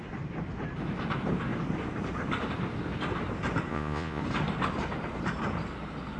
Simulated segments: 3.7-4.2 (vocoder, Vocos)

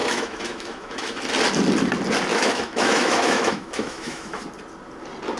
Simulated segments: 0.0-1.2 (autoencoder, DAC-VAE); 2.3-4.4